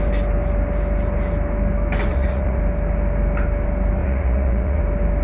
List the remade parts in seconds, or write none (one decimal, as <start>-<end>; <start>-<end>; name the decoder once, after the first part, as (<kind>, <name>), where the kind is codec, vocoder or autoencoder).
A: 2.1-2.6 (vocoder, Vocos); 4.0-4.8